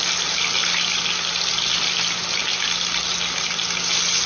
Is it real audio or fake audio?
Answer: real